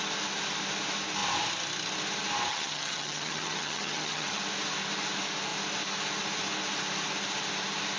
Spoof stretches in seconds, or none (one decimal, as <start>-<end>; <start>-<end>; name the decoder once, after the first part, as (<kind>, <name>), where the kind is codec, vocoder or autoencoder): 2.5-4.4 (vocoder, HiFi-GAN)